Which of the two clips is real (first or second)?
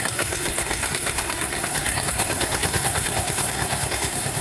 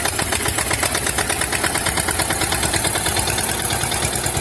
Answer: second